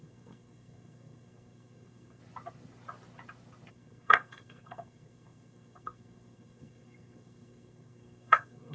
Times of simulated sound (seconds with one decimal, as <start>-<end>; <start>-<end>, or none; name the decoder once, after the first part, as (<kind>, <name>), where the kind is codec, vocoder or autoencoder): 0.0-2.2 (codec, SNAC); 3.7-8.7